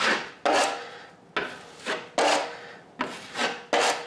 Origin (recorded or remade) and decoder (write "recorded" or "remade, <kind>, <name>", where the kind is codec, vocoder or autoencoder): recorded